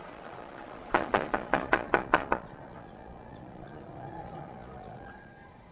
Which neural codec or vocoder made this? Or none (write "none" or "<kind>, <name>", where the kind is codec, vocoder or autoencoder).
vocoder, Vocos